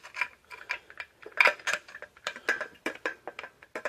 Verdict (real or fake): real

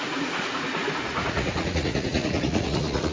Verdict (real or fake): fake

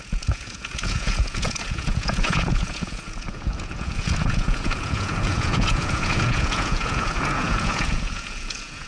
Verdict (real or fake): fake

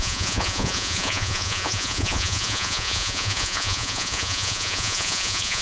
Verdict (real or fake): fake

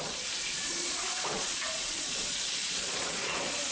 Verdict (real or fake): fake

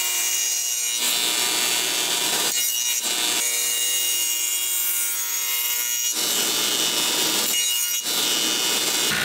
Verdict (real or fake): real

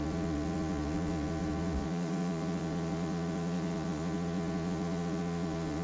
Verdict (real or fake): fake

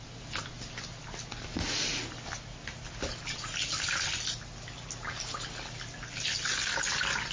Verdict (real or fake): real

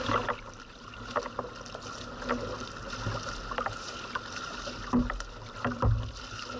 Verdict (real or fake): real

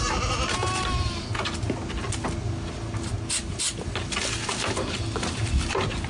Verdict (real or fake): real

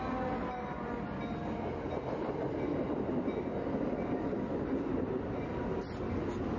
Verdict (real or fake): real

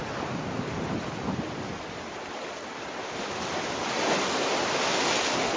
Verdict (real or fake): real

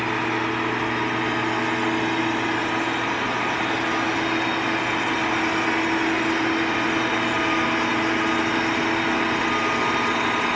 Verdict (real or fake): real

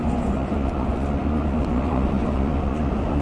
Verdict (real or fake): fake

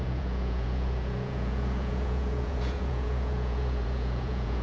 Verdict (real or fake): fake